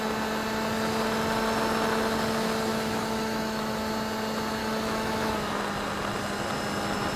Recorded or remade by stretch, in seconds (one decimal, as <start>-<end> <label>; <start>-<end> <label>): 0.0-2.7 recorded; 2.7-3.9 remade; 3.9-4.6 recorded; 4.6-5.6 remade; 5.6-7.2 recorded